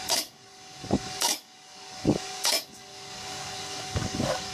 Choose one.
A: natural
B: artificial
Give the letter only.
B